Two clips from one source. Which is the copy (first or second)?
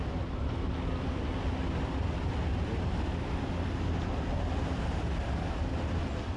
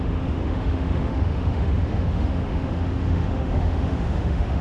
second